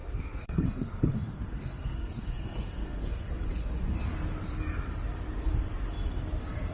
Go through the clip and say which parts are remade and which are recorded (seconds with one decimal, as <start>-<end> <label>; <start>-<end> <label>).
0.0-4.0 remade; 4.0-6.7 recorded